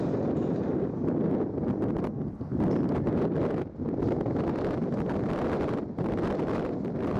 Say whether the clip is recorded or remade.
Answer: recorded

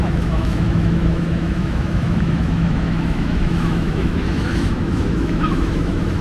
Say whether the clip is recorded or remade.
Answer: remade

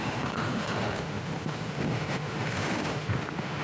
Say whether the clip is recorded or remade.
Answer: remade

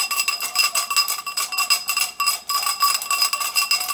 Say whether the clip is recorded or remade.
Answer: recorded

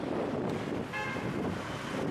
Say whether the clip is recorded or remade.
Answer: recorded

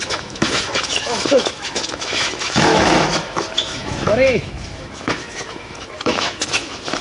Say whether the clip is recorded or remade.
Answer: remade